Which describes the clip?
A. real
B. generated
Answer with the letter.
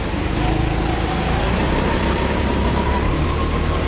B